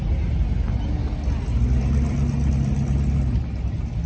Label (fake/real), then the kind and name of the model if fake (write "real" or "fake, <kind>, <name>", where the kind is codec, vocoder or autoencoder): real